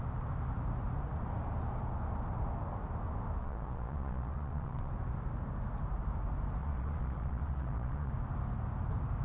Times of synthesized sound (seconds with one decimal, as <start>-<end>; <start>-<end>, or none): 3.4-4.9; 6.6-8.1